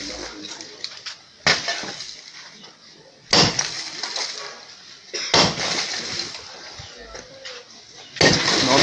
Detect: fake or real real